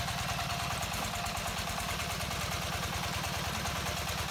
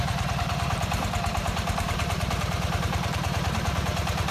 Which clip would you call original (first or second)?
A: first